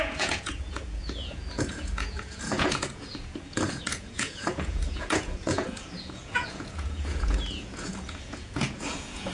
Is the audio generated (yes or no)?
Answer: yes